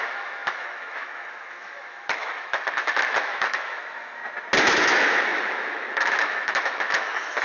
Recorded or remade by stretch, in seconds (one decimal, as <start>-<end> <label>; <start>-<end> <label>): 0.0-4.2 remade; 4.2-4.7 recorded; 4.7-7.4 remade